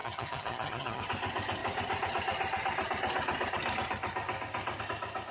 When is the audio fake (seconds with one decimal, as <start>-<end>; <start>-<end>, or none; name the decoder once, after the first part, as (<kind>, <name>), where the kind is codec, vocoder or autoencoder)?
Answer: 0.0-1.0 (vocoder, HiFi-GAN)